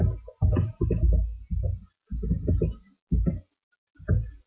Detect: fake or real real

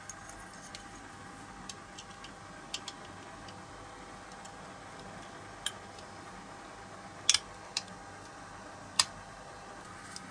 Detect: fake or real real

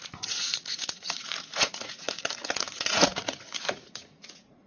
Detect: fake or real fake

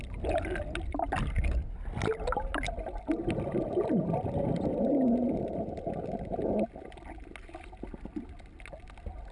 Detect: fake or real real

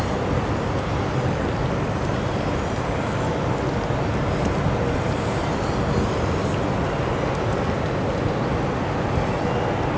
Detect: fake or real real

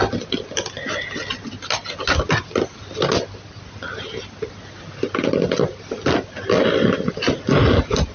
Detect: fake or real real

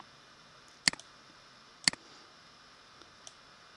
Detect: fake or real real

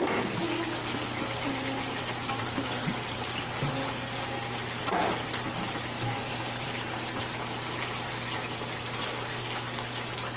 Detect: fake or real real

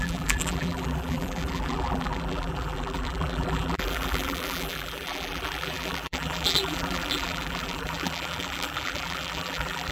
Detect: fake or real fake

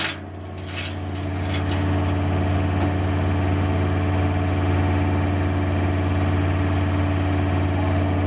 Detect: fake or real real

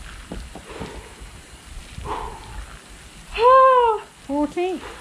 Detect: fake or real real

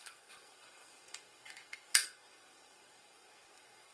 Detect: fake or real fake